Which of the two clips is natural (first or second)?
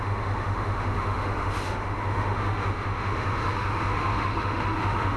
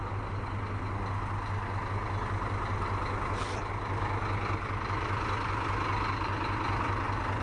second